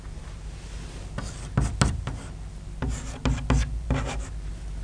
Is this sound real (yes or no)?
yes